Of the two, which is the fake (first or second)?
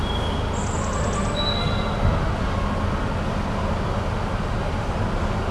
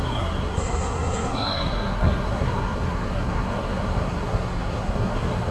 second